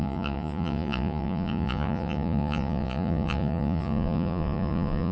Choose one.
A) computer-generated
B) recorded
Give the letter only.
A